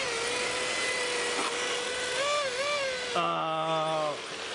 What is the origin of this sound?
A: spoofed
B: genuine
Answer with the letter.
B